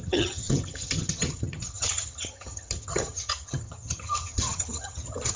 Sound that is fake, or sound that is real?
fake